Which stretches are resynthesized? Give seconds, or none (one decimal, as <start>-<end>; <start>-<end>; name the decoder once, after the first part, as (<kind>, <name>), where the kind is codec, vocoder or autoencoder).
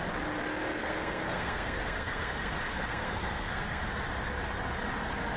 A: 0.7-3.9 (codec, SNAC)